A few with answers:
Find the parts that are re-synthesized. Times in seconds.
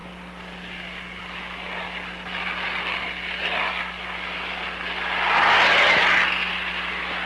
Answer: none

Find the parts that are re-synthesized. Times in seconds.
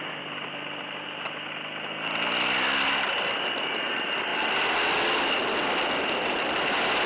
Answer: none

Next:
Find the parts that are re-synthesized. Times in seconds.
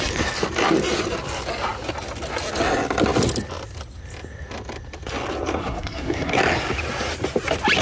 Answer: 5.6-6.4 (codec, SNAC)